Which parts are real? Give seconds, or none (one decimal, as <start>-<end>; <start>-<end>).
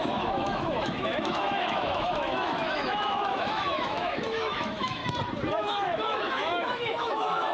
5.0-5.5